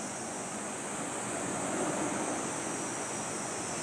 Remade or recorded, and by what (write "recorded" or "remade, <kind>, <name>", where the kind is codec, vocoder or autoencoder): remade, vocoder, Vocos